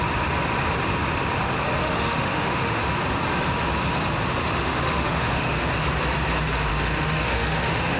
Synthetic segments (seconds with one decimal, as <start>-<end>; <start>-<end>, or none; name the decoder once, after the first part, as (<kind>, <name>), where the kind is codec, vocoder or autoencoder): 1.8-2.8 (autoencoder, DAC-VAE); 4.4-5.7; 6.7-8.0